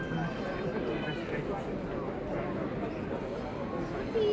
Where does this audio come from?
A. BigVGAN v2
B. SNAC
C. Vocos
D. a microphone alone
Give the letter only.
D